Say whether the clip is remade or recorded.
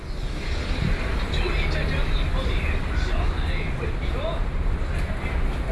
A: recorded